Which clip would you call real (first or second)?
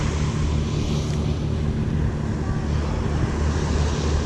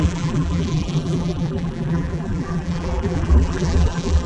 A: first